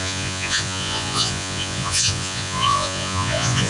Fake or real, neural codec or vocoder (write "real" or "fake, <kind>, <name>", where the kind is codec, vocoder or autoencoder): fake, vocoder, Vocos